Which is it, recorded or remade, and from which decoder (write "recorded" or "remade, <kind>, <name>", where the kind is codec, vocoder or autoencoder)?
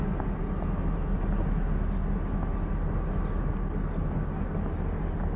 recorded